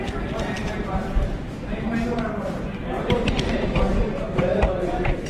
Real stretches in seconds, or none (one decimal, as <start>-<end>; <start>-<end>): 0.0-0.6; 3.8-5.3